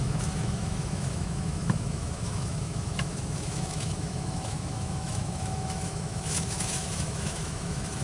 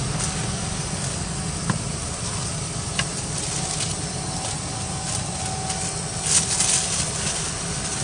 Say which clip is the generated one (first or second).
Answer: first